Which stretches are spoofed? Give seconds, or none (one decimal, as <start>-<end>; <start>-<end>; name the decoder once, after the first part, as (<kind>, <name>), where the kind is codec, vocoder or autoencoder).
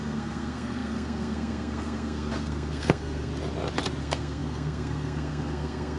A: 0.0-3.3 (codec, SNAC); 4.0-6.0